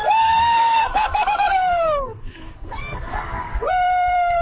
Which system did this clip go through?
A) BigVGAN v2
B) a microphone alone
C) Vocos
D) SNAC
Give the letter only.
D